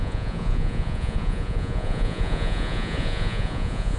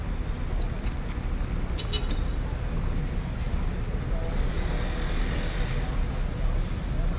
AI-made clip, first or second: first